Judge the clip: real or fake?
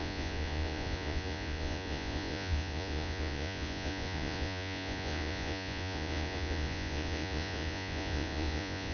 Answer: fake